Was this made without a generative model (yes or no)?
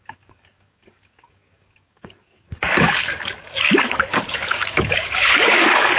no